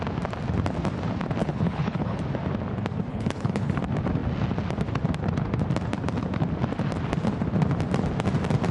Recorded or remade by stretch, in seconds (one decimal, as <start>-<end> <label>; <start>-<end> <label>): 0.0-1.4 recorded; 1.4-2.2 remade; 2.2-3.1 recorded; 3.1-3.8 remade; 3.8-8.7 recorded